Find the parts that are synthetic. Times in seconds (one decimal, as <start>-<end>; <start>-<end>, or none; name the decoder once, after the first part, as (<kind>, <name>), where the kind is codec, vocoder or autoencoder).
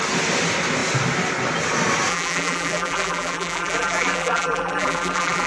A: 2.1-5.5 (vocoder, BigVGAN v2)